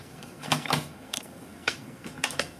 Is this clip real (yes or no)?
no